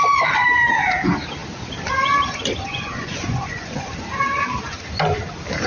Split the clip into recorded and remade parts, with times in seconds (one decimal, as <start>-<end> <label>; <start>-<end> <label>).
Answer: 0.0-2.7 recorded; 2.7-3.9 remade; 3.9-5.7 recorded